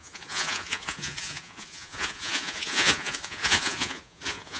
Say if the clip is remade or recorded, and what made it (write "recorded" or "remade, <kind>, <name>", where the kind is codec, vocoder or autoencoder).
remade, vocoder, Vocos